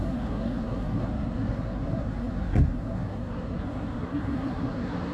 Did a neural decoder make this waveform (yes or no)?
yes